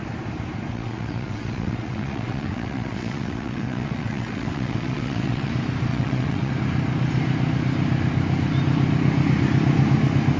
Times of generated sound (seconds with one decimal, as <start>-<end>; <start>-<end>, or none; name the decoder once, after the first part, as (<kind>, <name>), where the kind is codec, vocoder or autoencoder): 0.7-5.5 (vocoder, WaveNeXt); 5.9-6.5